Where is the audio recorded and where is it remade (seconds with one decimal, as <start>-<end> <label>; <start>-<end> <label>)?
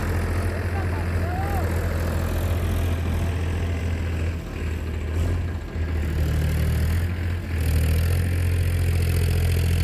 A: 0.0-9.8 recorded